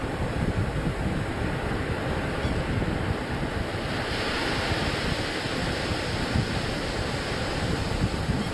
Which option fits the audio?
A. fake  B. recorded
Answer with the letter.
B